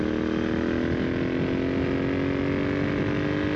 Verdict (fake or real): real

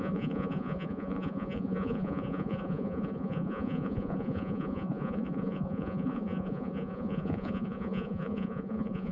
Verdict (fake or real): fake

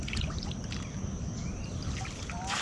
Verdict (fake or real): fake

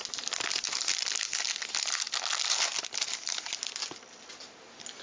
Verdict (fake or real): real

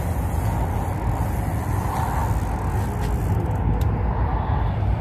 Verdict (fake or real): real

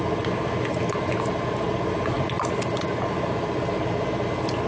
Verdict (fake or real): real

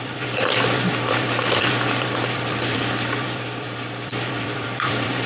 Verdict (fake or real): fake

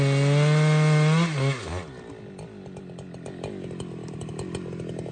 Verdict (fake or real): real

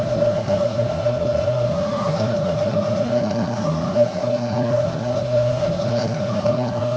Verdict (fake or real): fake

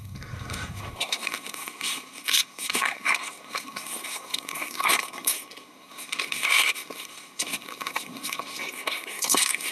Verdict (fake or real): fake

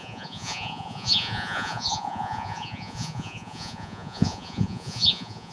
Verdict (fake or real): fake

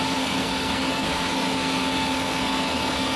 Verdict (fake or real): fake